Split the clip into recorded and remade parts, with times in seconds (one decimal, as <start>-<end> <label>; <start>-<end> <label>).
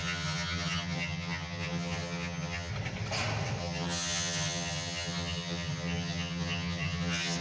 0.0-2.7 remade; 2.7-3.6 recorded; 3.6-7.4 remade